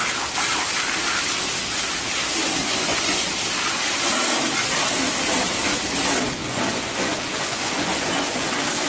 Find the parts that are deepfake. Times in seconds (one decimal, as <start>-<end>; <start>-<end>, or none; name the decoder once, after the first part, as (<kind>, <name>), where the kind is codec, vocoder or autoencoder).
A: 2.6-3.3 (vocoder, Vocos); 6.4-8.5

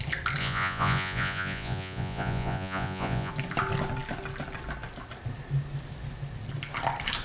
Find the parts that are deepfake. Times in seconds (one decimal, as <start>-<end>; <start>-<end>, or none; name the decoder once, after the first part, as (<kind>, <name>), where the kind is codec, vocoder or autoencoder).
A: 0.4-3.3 (vocoder, Vocos)

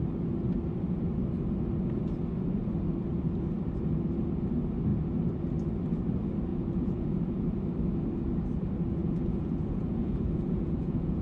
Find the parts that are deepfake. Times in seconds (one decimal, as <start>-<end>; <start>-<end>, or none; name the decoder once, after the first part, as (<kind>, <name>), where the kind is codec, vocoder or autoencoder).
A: 6.5-7.4 (vocoder, Vocos); 9.0-11.2

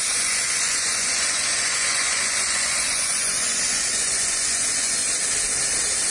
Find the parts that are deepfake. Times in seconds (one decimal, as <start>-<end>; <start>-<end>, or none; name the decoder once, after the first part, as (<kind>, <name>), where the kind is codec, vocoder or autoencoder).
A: 0.0-5.0 (vocoder, Vocos)